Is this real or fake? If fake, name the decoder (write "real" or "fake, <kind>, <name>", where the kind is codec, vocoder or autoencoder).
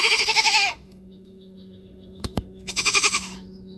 fake, autoencoder, DAC-VAE